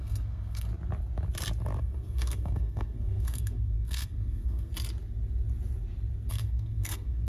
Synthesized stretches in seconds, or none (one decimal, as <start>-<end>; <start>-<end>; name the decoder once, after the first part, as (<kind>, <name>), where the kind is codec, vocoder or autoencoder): 0.0-0.7 (codec, SNAC); 1.8-4.7; 6.3-7.3